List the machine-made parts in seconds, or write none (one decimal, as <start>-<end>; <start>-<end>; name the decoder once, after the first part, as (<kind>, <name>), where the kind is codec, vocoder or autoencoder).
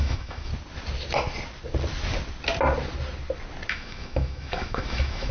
0.0-0.5 (autoencoder, DAC-VAE); 3.7-5.3